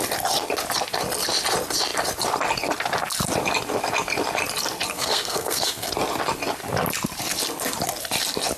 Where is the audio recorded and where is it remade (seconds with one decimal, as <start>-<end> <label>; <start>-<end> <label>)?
0.0-4.9 recorded; 4.9-5.9 remade; 5.9-8.6 recorded